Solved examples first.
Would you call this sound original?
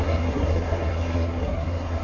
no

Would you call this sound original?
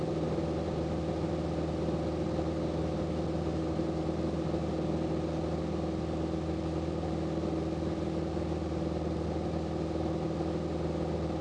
yes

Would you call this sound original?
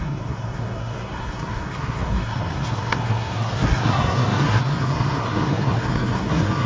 no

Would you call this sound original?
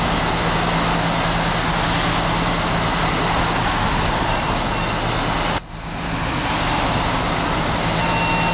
yes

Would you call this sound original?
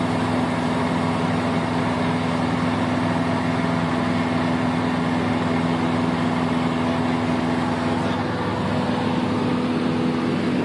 yes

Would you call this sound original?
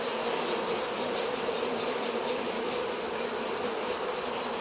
yes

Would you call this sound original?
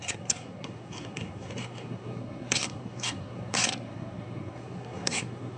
no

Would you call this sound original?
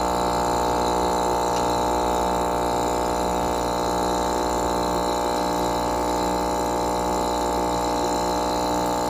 yes